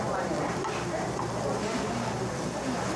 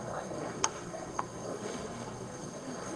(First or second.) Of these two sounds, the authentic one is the first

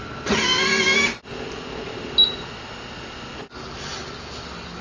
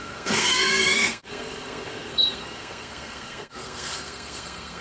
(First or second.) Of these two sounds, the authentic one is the first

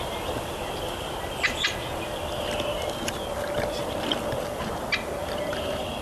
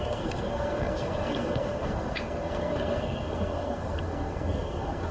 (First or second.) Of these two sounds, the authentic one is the first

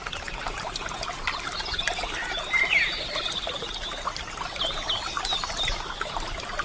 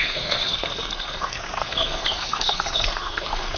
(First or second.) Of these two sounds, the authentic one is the first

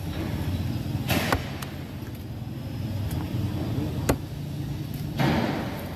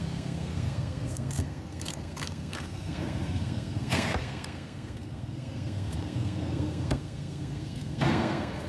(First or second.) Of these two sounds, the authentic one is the first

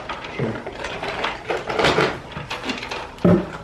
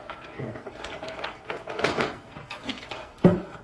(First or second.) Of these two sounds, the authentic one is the first